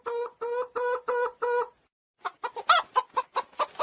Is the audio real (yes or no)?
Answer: yes